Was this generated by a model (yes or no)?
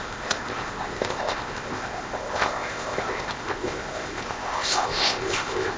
yes